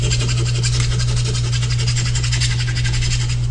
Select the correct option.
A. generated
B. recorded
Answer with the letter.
B